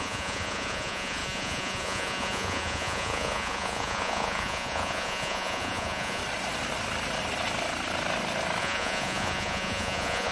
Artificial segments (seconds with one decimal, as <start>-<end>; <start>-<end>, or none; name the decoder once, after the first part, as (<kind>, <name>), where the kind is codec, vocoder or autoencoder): 0.0-6.2 (vocoder, Vocos); 8.6-10.3